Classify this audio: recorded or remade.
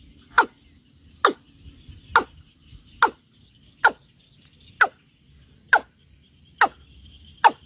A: recorded